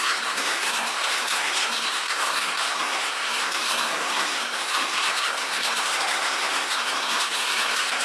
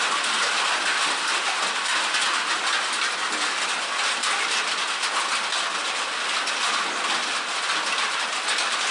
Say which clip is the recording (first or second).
second